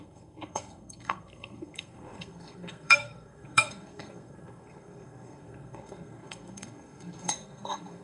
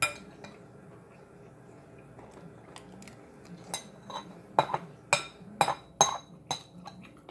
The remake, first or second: first